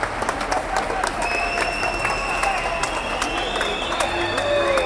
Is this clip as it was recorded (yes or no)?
yes